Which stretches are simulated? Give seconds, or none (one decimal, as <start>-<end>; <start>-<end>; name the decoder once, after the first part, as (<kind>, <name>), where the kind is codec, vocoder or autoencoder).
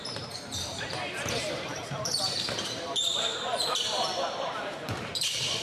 0.0-5.6 (vocoder, BigVGAN v2)